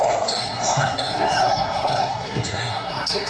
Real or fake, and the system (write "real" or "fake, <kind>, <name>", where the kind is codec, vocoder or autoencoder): fake, codec, SNAC